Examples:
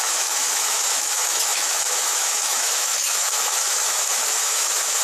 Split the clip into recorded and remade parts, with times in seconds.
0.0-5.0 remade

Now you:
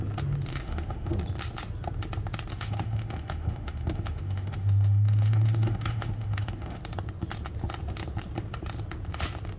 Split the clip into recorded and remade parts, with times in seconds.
0.0-0.5 recorded; 0.5-1.1 remade; 1.1-2.5 recorded; 2.5-6.8 remade; 6.8-9.6 recorded

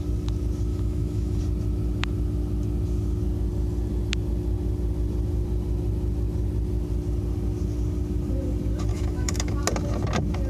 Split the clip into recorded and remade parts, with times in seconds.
0.0-0.7 recorded; 0.7-1.4 remade; 1.4-8.9 recorded; 8.9-9.5 remade; 9.5-10.5 recorded

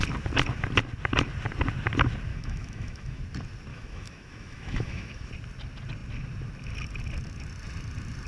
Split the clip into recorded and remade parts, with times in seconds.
0.0-2.3 recorded; 2.3-3.2 remade; 3.2-3.7 recorded; 3.7-5.3 remade; 5.3-8.3 recorded

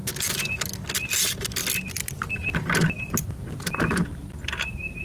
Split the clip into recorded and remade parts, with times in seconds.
0.0-5.0 recorded

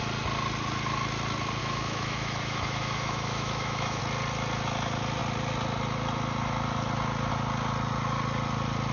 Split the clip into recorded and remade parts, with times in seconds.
0.0-1.6 recorded; 1.6-4.0 remade; 4.0-8.9 recorded

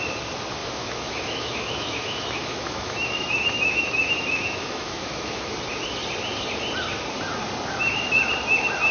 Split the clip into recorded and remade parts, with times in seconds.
0.0-0.6 recorded; 0.6-5.5 remade; 5.5-8.9 recorded

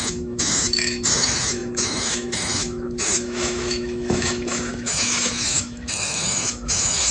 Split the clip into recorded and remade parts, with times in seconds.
0.0-7.1 remade